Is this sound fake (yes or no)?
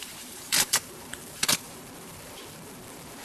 yes